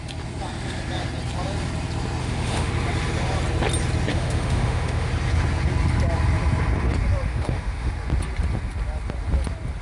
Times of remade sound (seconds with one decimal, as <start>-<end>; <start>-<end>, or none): 2.2-2.7; 4.1-5.1; 7.3-7.9